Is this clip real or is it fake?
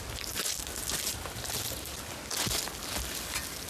real